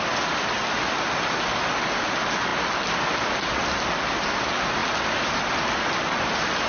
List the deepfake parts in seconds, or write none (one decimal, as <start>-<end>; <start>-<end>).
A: none